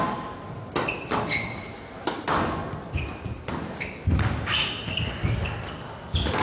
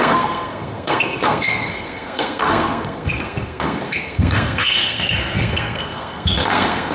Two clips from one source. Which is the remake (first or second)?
second